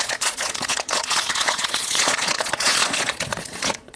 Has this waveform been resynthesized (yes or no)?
yes